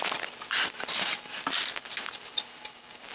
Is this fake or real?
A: real